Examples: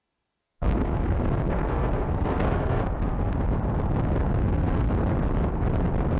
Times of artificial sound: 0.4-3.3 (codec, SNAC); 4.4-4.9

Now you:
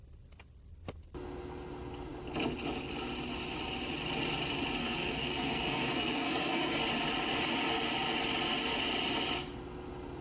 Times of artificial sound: 4.8-6.8 (codec, SNAC)

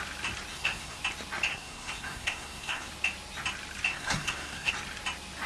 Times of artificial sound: 0.5-1.0 (codec, SNAC); 1.5-2.9; 3.9-4.7

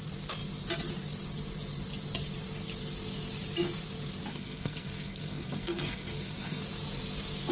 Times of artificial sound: 4.3-6.6 (codec, SNAC)

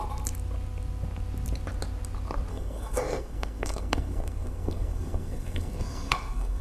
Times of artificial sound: 2.5-6.6 (codec, SNAC)

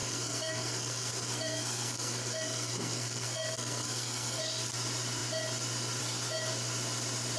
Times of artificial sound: 0.0-4.4 (codec, SNAC)

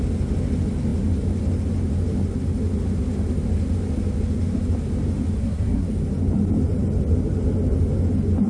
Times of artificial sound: 5.4-5.9 (codec, SNAC)

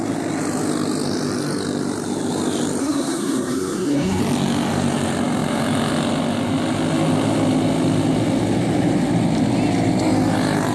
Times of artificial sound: 2.8-4.2 (codec, SNAC)